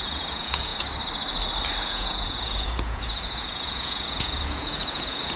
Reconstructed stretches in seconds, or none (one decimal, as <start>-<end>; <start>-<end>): 0.0-0.7; 1.8-5.4